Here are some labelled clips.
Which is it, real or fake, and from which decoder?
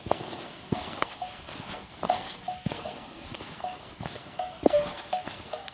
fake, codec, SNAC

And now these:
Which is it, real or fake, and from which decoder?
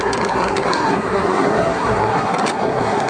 fake, codec, SNAC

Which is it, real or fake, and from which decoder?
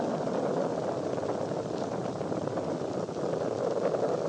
real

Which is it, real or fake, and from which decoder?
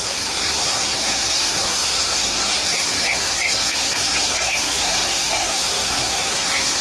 fake, codec, SNAC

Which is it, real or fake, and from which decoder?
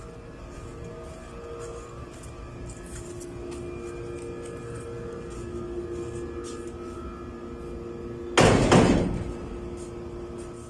real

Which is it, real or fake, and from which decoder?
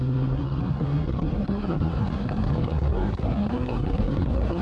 fake, codec, SNAC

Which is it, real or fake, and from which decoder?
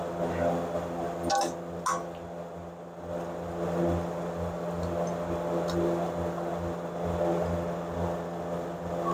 real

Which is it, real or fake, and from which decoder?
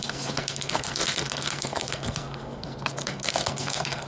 fake, codec, SNAC